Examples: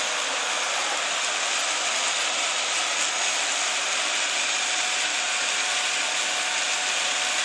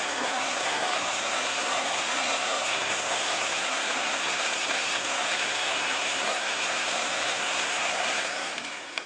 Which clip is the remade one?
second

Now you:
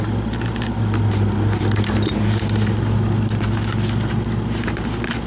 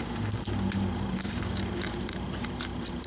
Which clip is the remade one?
second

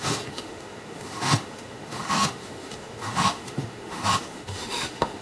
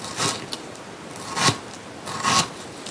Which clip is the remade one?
first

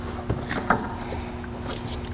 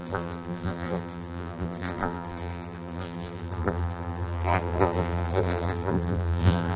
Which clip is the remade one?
second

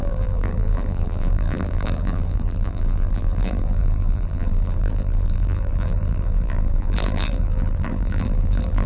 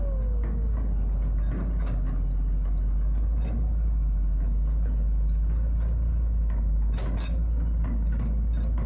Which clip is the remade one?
first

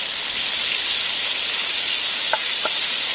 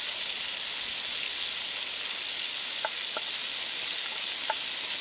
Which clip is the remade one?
first